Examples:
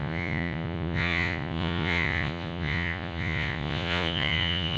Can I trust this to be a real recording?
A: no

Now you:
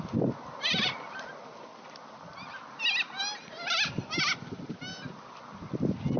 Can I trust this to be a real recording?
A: yes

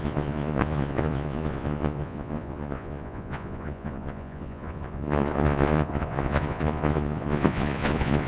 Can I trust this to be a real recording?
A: no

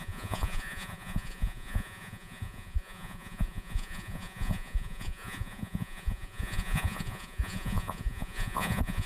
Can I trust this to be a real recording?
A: no